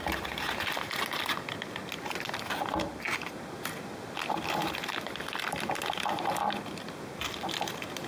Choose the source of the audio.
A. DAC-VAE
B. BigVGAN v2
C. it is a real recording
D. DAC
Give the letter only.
C